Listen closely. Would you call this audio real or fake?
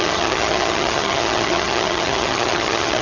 fake